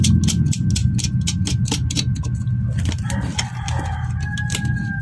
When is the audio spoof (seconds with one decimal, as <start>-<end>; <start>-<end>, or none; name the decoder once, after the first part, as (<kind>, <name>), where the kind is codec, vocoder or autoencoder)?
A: none